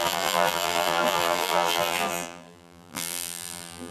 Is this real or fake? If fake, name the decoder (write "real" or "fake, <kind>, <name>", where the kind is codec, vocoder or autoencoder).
fake, vocoder, BigVGAN v2